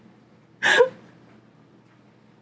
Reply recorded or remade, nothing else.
recorded